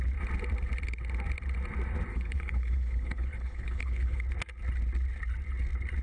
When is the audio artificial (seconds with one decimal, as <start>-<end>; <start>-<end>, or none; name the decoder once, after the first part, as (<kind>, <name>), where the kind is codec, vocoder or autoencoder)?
2.1-4.2 (codec, HILCodec)